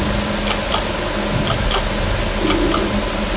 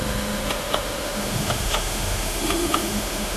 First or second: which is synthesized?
second